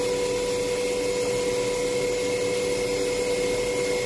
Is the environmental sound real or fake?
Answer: real